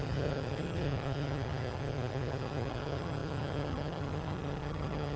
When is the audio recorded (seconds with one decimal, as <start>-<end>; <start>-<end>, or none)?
none